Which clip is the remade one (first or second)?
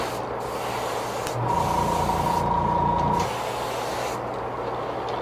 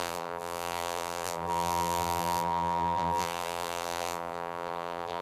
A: second